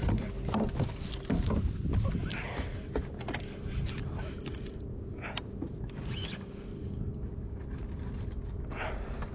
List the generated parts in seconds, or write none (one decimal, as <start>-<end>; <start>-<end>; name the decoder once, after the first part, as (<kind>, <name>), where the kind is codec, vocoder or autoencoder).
none